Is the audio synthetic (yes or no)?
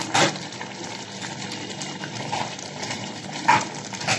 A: yes